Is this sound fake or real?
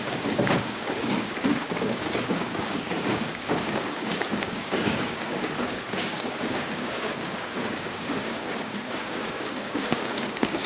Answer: fake